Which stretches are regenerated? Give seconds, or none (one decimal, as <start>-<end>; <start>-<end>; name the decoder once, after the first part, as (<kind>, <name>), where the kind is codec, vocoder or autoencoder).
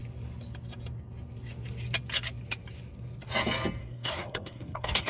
3.8-5.1 (codec, SNAC)